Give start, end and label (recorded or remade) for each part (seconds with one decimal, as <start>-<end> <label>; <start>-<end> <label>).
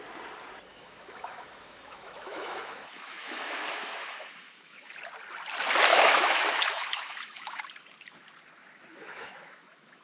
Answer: 0.0-0.7 recorded; 0.7-4.9 remade; 4.9-5.9 recorded; 5.9-7.6 remade; 7.6-8.9 recorded; 8.9-10.0 remade